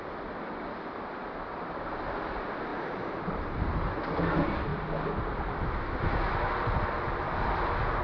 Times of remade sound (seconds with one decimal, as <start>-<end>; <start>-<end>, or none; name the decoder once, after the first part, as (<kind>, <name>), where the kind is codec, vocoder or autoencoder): 2.7-4.2 (vocoder, BigVGAN v2)